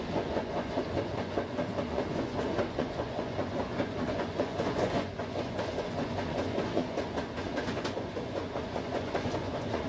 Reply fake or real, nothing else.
fake